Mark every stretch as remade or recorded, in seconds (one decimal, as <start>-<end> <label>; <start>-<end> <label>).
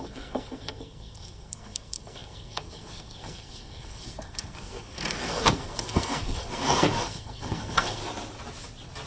0.0-8.0 remade; 8.0-9.1 recorded